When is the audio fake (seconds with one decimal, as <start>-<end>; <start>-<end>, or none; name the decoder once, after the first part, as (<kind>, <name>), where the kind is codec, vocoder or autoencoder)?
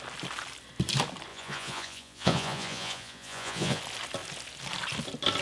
1.3-3.8 (vocoder, Vocos)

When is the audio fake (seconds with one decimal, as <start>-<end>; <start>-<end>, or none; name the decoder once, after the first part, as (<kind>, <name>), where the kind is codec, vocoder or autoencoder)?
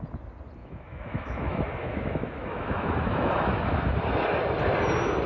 0.6-3.8 (autoencoder, DAC-VAE)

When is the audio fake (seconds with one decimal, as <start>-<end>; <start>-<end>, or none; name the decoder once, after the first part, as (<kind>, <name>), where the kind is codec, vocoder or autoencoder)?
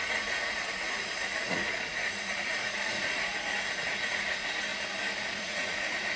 0.0-4.7 (vocoder, Vocos); 5.4-6.2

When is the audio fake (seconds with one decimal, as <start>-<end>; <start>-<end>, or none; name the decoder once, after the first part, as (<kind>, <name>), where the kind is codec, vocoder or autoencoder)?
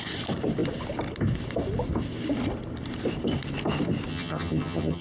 4.1-5.0 (vocoder, HiFi-GAN)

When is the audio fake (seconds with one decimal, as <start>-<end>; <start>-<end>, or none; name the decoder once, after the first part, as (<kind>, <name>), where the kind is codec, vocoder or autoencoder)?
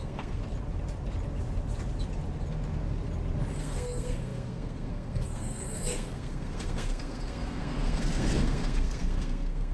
0.0-0.4 (codec, SNAC); 3.6-9.7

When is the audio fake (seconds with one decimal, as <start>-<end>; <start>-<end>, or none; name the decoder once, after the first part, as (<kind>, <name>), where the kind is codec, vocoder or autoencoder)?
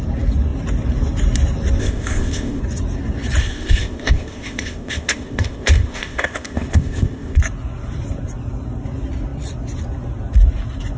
1.8-2.6 (codec, ZipCodec); 3.4-7.4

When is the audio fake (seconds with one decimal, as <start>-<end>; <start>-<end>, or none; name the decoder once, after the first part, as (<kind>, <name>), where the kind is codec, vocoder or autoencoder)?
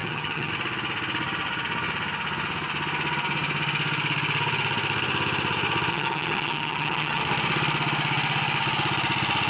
0.0-0.5 (vocoder, HiFi-GAN); 5.9-7.2